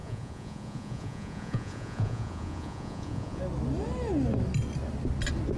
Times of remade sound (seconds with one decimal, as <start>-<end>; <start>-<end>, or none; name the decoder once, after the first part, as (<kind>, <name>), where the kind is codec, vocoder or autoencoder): 0.0-3.4 (vocoder, Vocos)